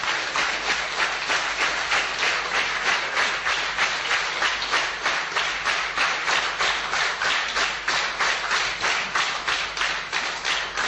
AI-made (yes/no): no